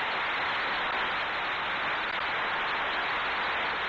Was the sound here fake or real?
real